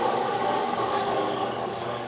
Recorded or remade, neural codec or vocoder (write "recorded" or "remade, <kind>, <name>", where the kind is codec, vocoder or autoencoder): remade, codec, DAC